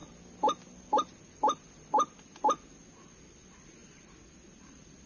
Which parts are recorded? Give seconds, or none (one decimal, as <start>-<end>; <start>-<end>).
0.0-5.1